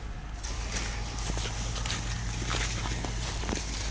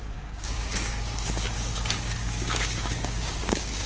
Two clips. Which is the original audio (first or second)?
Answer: first